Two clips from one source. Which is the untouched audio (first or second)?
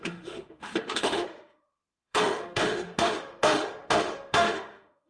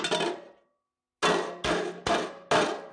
second